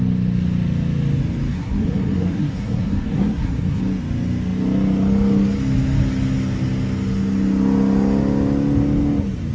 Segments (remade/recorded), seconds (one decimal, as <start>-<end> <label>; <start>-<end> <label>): 0.0-1.5 recorded; 1.5-3.8 remade; 3.8-9.5 recorded